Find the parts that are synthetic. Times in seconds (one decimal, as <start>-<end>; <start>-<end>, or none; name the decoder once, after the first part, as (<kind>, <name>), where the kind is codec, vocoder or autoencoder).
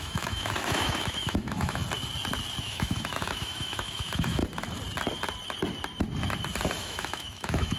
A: 0.0-1.8 (autoencoder, DAC-VAE); 2.6-4.4; 6.8-7.8